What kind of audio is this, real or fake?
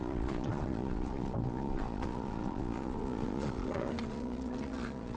fake